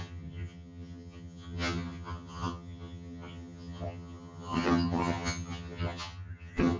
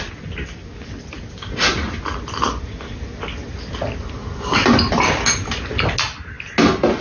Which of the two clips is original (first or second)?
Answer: second